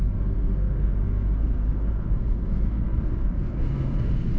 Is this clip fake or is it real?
fake